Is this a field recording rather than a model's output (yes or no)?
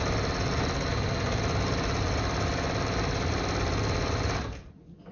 yes